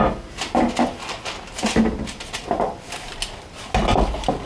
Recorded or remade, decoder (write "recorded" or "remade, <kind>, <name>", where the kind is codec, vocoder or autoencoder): recorded